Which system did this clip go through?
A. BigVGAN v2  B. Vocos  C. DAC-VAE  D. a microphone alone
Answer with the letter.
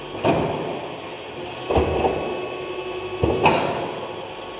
D